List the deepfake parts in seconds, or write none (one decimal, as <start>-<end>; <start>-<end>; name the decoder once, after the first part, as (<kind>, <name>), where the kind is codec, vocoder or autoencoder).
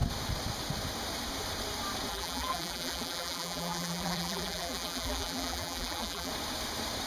2.1-6.3 (vocoder, BigVGAN v2)